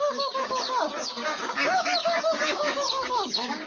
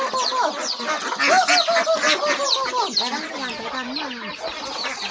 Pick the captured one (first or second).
second